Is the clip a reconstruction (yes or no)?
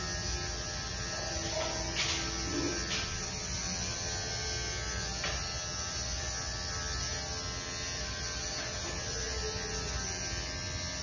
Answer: no